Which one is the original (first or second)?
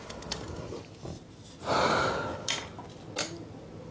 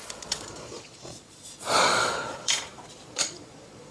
first